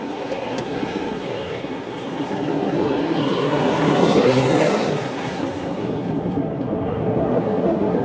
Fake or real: fake